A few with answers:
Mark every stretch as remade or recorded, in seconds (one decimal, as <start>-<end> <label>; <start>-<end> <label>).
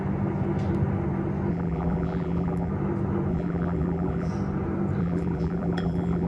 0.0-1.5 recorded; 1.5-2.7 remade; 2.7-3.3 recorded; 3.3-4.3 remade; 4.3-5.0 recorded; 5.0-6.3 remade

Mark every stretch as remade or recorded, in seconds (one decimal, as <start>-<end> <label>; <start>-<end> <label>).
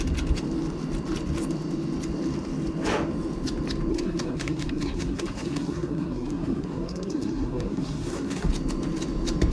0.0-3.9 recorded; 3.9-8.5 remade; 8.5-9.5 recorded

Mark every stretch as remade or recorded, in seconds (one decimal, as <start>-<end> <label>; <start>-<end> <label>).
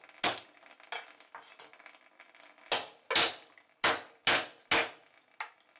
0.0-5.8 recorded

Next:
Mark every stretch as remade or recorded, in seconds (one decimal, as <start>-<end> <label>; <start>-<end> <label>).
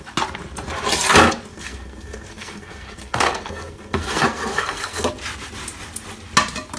0.0-1.5 recorded; 1.5-5.1 remade; 5.1-6.8 recorded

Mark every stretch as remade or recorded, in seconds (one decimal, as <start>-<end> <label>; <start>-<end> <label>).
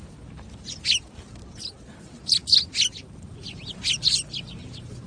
0.0-5.1 recorded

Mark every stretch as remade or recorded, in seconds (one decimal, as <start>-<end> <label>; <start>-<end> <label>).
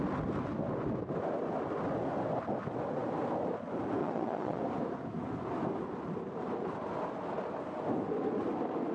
0.0-4.0 recorded; 4.0-4.6 remade; 4.6-8.9 recorded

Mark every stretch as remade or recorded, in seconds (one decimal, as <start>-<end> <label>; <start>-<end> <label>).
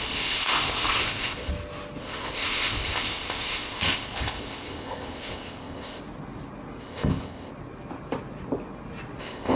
0.0-1.5 remade; 1.5-2.0 recorded; 2.0-6.0 remade; 6.0-6.8 recorded; 6.8-7.5 remade; 7.5-9.2 recorded; 9.2-9.6 remade